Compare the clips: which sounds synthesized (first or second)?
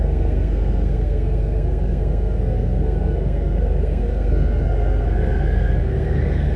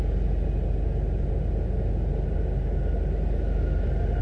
first